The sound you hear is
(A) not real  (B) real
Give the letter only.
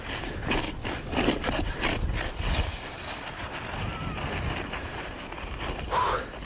B